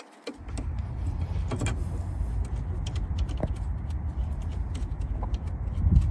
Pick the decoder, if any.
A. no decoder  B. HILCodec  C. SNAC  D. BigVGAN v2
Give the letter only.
A